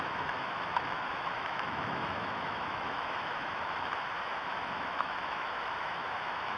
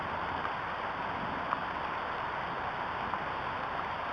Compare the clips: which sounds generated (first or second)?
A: first